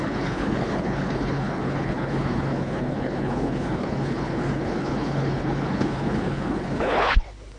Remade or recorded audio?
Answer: remade